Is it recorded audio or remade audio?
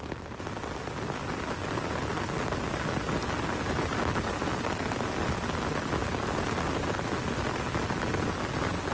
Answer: recorded